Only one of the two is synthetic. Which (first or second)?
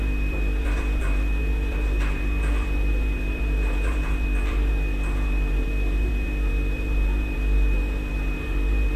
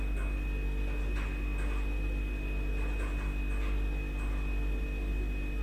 first